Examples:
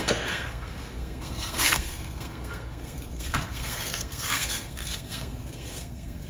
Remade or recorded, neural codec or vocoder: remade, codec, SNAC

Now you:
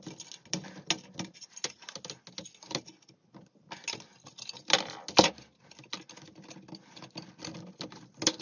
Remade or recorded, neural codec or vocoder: recorded